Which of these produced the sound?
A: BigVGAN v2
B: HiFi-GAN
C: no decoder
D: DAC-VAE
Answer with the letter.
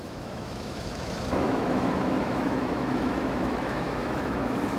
D